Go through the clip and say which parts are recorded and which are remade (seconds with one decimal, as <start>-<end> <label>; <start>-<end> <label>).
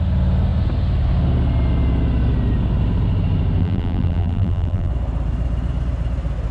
0.0-3.6 recorded; 3.6-4.9 remade; 4.9-6.5 recorded